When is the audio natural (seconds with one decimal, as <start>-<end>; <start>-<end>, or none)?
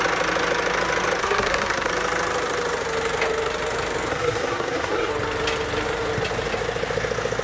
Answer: 0.0-1.2; 1.9-4.1; 5.1-7.4